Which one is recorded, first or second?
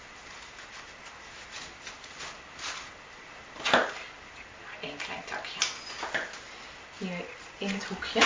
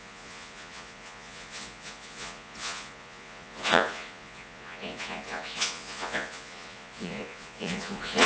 first